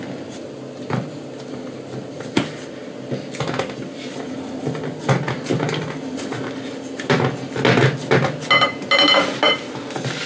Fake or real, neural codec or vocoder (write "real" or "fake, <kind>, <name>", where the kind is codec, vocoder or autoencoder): real